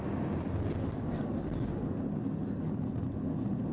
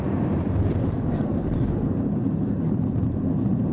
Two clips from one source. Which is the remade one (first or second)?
second